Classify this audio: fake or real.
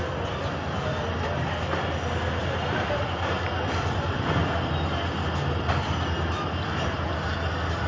real